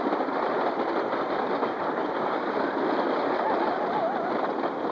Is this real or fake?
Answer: fake